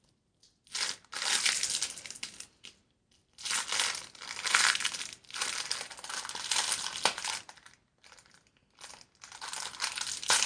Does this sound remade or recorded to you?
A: recorded